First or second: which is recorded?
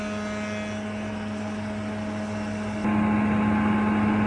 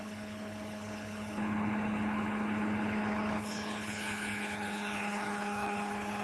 first